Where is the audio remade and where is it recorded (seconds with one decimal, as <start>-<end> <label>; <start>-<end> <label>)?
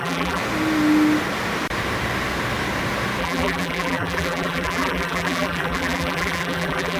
0.0-0.4 remade; 0.4-3.2 recorded; 3.2-7.0 remade